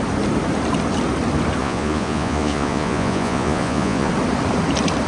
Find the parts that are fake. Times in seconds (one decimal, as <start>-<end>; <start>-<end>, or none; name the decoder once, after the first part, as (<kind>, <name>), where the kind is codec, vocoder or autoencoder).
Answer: 1.6-4.1 (vocoder, Vocos)